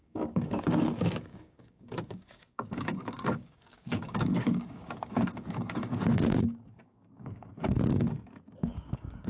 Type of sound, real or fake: fake